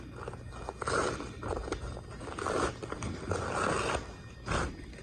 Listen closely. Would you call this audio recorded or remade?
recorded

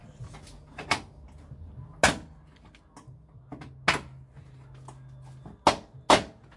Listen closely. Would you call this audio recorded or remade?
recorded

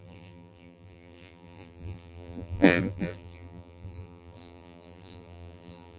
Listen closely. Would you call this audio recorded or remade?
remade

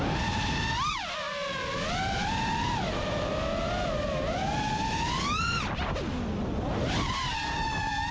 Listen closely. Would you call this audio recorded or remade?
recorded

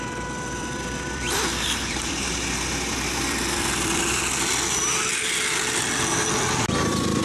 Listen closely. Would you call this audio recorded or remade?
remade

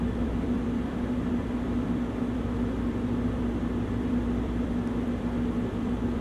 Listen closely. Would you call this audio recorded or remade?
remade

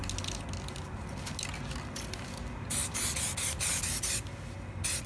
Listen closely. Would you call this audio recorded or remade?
recorded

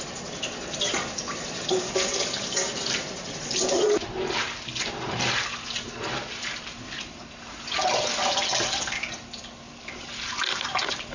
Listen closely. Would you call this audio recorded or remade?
recorded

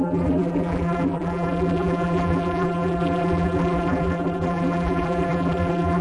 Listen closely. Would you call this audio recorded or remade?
remade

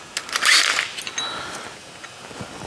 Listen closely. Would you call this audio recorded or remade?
recorded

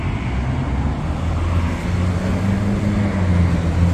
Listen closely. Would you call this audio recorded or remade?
recorded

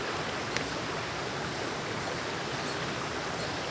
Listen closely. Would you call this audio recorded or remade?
recorded